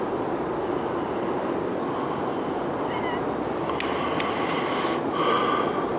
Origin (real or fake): real